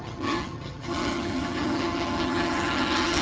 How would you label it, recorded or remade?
remade